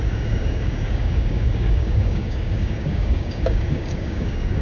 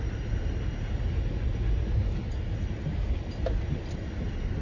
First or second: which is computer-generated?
first